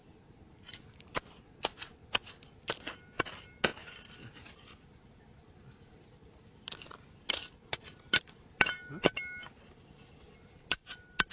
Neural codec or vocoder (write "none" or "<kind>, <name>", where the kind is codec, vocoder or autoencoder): none